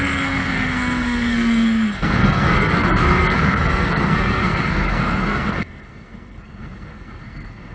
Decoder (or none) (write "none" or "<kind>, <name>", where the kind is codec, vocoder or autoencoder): codec, SNAC